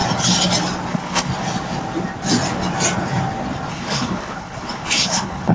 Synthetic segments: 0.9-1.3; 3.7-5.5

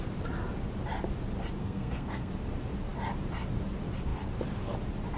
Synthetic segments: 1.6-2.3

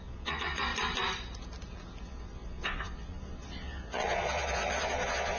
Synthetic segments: 0.0-0.7; 2.0-5.4

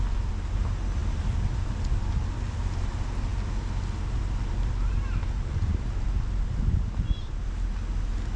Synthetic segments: none

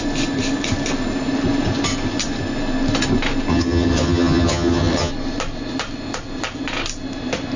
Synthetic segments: 3.5-5.1